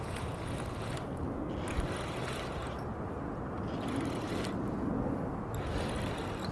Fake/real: real